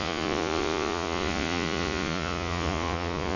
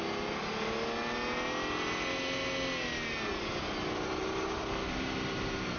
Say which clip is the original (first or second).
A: second